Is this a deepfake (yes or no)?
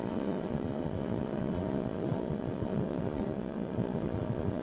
yes